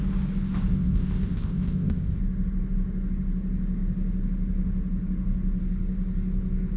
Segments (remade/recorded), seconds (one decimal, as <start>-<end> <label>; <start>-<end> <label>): 0.0-0.7 recorded; 0.7-2.2 remade; 2.2-6.8 recorded